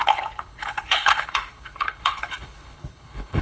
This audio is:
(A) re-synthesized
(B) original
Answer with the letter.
A